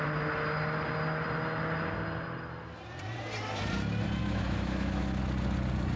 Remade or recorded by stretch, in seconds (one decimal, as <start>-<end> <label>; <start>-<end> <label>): 0.0-4.2 recorded; 4.2-5.2 remade; 5.2-6.0 recorded